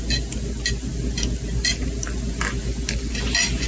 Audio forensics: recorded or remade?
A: recorded